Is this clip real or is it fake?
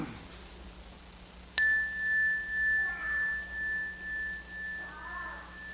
real